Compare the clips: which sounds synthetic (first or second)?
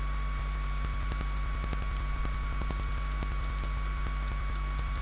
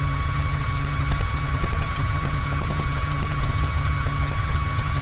second